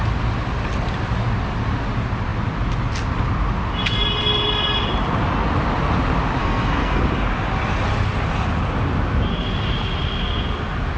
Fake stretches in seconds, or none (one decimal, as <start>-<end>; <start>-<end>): 6.4-7.0